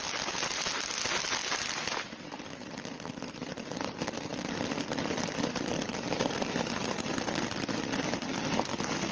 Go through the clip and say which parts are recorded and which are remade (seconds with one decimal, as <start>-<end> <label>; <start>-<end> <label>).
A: 0.0-9.1 recorded